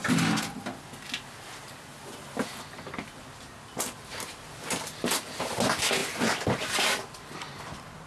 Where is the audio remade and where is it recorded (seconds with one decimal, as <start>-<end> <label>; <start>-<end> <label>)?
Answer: 0.0-6.0 recorded; 6.0-8.1 remade